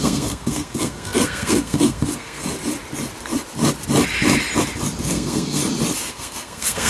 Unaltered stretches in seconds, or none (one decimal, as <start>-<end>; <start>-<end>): 2.5-5.0; 5.6-6.1

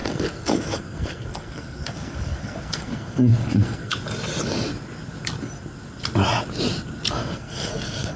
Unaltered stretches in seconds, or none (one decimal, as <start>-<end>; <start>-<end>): 3.9-7.1